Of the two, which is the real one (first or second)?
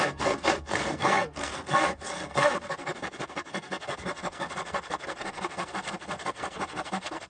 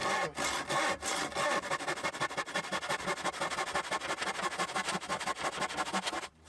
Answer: second